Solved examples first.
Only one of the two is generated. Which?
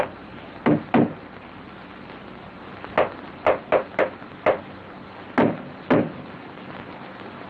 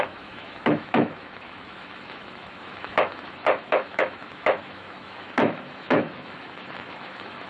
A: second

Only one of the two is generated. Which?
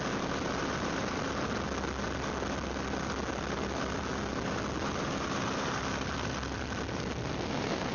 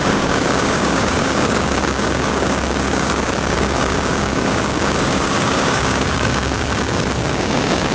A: second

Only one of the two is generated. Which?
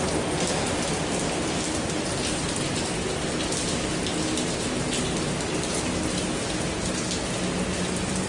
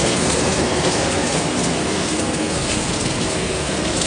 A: second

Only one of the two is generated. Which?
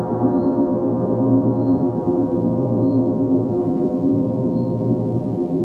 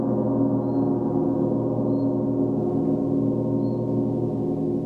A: first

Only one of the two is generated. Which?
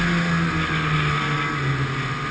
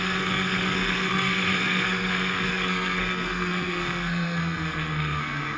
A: second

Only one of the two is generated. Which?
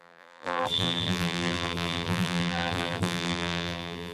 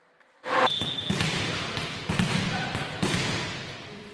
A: first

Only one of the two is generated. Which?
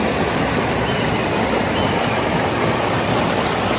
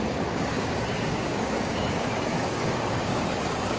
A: second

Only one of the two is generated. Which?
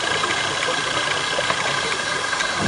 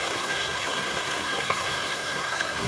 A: second